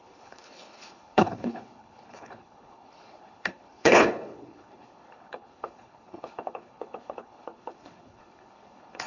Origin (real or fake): fake